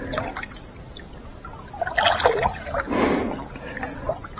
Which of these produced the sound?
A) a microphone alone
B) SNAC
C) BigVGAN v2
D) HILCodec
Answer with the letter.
A